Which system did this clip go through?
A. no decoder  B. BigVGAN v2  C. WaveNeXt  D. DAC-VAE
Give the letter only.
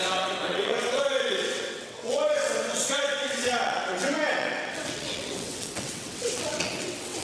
C